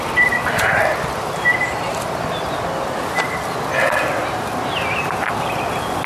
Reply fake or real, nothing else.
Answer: real